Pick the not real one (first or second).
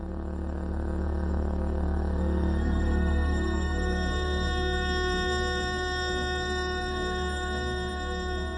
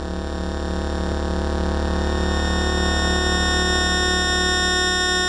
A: first